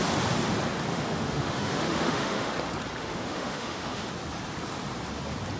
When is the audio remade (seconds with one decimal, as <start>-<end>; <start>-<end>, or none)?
0.9-2.5; 3.0-4.1